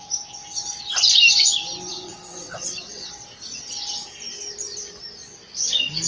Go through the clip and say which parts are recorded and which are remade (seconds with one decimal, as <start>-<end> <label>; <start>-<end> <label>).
0.0-1.9 recorded; 1.9-3.1 remade; 3.1-6.1 recorded